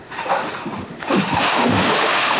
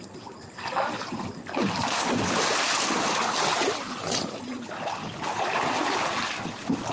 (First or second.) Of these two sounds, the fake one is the first